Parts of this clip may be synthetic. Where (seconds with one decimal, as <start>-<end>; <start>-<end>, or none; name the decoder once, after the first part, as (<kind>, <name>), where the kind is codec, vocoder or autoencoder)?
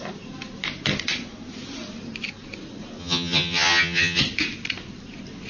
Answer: 3.0-4.2 (vocoder, HiFi-GAN)